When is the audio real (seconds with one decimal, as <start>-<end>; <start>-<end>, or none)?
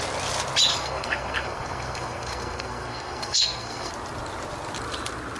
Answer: 0.0-0.7; 3.9-5.4